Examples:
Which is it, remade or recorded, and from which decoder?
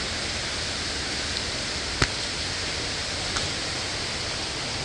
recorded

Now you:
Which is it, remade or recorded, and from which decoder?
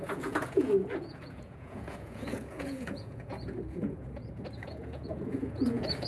remade, vocoder, Vocos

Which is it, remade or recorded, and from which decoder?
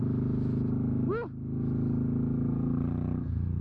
recorded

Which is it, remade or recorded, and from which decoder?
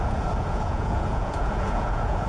remade, vocoder, Vocos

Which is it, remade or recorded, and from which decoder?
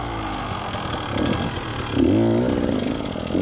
recorded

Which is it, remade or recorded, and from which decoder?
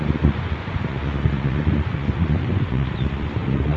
remade, vocoder, Vocos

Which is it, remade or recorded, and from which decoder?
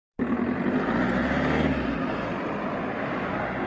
recorded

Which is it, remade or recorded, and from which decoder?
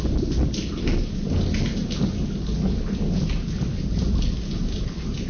recorded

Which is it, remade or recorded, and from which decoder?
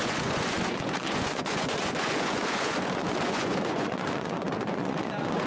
remade, vocoder, Vocos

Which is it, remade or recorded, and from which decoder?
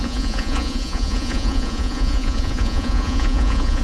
remade, vocoder, Vocos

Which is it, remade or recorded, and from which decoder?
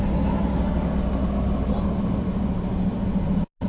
recorded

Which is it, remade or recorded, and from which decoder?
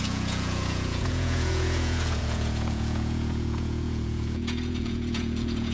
remade, vocoder, Vocos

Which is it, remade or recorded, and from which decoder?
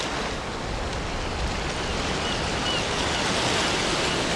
recorded